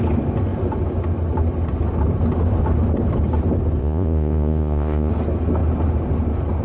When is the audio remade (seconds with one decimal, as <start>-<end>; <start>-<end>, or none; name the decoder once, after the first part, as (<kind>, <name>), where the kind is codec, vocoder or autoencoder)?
3.8-5.1 (vocoder, Vocos)